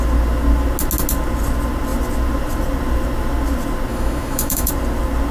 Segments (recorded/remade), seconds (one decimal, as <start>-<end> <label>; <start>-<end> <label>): 0.0-3.9 recorded; 3.9-4.7 remade; 4.7-5.3 recorded